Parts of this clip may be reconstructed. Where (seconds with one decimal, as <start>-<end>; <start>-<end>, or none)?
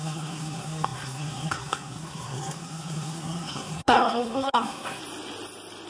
0.0-5.0